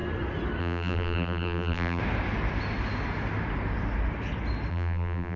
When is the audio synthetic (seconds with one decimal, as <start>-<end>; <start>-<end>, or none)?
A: 0.6-2.0; 4.7-5.4